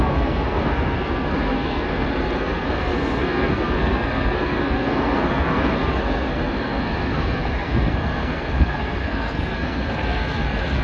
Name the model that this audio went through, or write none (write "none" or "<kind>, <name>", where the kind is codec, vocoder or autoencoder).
codec, SNAC